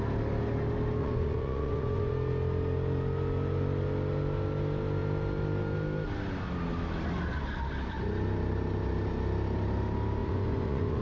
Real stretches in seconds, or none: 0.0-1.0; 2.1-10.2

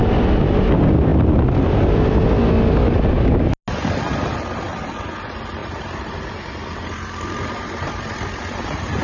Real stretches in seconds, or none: 0.0-5.6

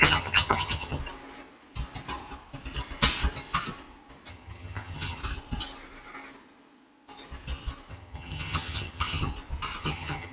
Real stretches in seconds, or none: 1.0-4.3; 5.2-7.9; 9.3-9.8

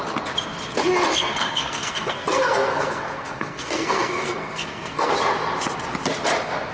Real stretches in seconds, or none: 0.0-1.1; 5.1-6.7

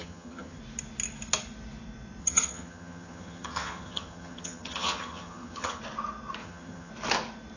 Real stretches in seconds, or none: 0.6-2.2; 5.8-6.4; 6.9-7.6

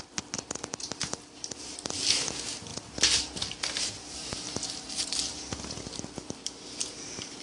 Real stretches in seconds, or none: 0.0-1.0; 2.3-5.3; 6.2-7.4

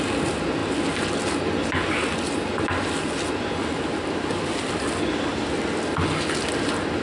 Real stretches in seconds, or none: 0.0-7.0